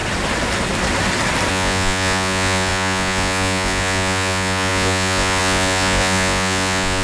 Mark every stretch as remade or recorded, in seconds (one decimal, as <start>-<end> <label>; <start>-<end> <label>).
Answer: 0.0-1.5 recorded; 1.5-7.0 remade